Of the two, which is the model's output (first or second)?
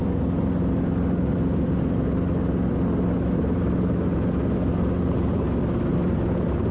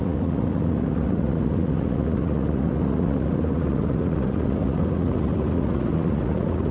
second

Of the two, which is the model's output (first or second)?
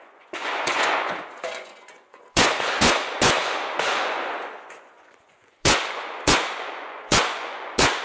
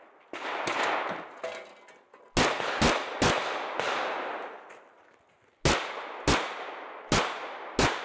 first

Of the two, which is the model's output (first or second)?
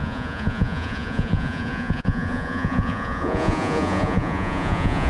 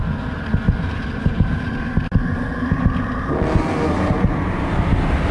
first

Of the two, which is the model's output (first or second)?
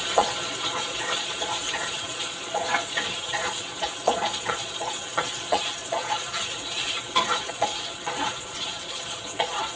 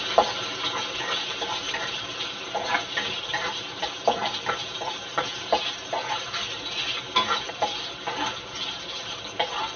first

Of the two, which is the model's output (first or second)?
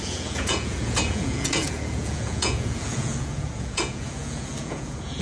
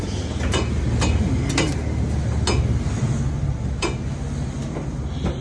first